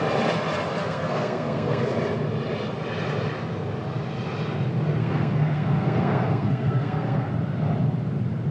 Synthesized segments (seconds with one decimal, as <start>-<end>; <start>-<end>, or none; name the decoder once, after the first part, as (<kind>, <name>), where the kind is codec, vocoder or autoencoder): 0.8-1.8 (codec, SNAC); 5.0-7.3